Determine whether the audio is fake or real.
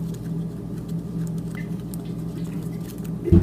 real